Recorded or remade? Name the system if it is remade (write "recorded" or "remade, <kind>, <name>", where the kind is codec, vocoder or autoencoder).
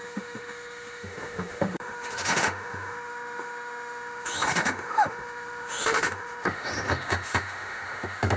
remade, autoencoder, DAC-VAE